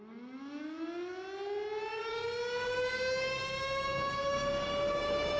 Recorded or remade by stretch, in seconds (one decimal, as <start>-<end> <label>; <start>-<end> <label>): 0.0-1.9 recorded; 1.9-5.4 remade